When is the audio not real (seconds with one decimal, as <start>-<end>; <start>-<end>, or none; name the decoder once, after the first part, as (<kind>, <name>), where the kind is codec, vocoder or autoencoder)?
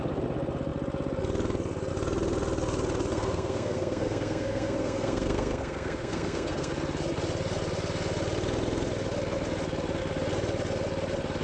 3.1-6.7 (codec, SNAC)